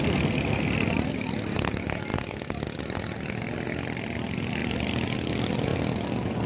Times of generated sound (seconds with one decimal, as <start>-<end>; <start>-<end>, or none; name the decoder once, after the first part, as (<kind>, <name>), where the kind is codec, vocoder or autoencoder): none

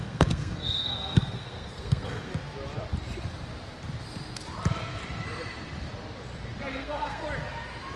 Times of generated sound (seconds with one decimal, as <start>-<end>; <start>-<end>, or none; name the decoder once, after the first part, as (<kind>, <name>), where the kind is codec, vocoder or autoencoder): 0.0-2.3 (codec, SNAC); 6.7-7.2

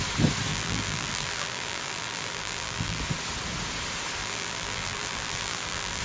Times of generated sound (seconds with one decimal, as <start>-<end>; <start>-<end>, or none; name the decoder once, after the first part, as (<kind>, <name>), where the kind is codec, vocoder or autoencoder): 0.5-3.0 (vocoder, BigVGAN v2); 4.2-6.0

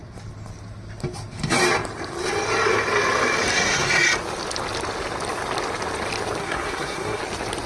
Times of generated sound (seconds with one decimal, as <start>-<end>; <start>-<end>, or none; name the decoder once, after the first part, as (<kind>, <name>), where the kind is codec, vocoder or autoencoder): 6.4-7.2 (codec, SNAC)

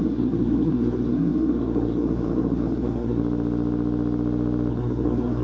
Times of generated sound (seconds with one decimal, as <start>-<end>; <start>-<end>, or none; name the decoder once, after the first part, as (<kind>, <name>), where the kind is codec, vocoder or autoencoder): 0.0-3.2 (codec, SNAC); 4.7-5.4

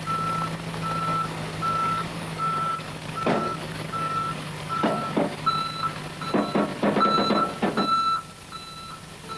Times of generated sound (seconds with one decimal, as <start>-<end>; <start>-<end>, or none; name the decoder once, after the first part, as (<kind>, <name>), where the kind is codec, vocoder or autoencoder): 1.1-5.5 (codec, DAC)